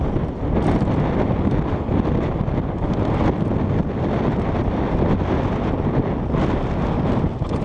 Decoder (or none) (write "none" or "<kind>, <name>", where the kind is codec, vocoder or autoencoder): none